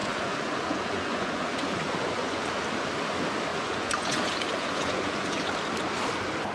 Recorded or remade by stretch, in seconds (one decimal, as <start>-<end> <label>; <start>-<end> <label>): 0.0-2.5 remade; 2.5-3.5 recorded; 3.5-5.5 remade; 5.5-6.5 recorded